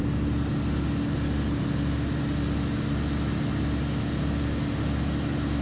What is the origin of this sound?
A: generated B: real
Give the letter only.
B